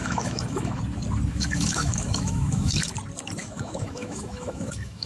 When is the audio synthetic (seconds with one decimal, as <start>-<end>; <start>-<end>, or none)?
0.0-0.8; 1.3-2.9; 3.4-5.1

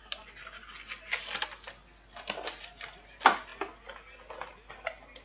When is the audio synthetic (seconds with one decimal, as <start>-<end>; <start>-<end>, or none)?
none

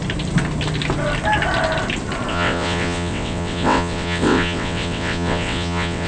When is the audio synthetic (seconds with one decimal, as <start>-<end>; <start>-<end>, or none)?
2.3-6.1

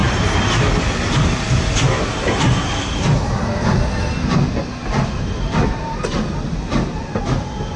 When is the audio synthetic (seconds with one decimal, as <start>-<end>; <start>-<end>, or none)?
none

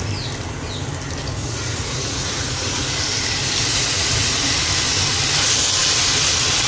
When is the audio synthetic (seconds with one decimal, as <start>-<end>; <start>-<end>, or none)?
1.4-3.0; 3.7-4.5

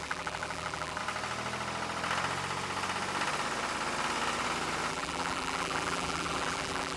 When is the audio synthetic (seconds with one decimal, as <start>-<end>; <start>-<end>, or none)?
0.0-1.0; 4.9-7.0

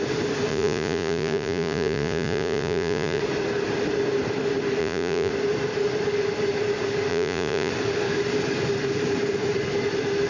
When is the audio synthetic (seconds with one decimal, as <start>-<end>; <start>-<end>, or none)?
0.5-3.2; 4.8-5.3; 7.1-7.7

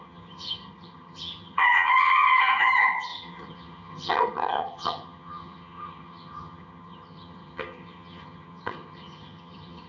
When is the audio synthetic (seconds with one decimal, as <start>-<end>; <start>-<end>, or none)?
0.0-9.9